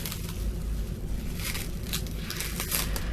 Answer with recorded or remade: recorded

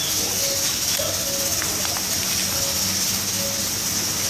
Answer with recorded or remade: recorded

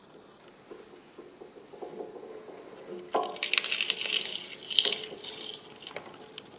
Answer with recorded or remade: recorded